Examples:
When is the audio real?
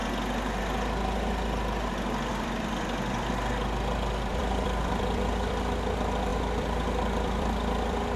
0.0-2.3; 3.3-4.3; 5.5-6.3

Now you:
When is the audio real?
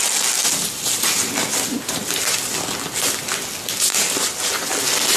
0.0-3.9; 4.5-5.2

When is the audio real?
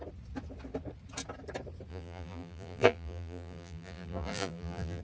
0.0-1.9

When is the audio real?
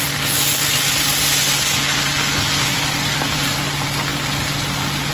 0.0-2.7; 3.6-5.1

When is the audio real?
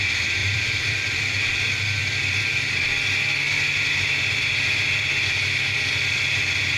0.0-0.4; 1.4-6.8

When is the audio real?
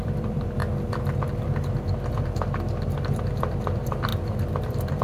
0.6-3.0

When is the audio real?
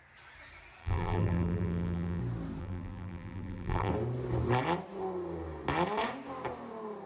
0.0-0.8; 2.2-2.6; 3.9-7.1